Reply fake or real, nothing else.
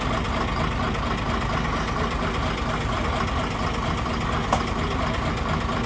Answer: real